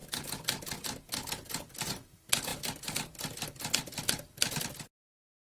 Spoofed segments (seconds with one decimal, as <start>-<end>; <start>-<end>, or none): none